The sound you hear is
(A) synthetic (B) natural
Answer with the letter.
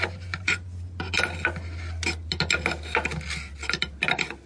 B